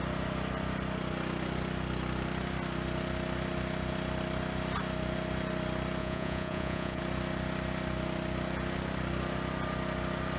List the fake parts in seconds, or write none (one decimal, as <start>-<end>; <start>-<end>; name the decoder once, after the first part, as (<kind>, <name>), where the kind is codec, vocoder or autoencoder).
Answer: 6.0-7.0 (vocoder, Vocos)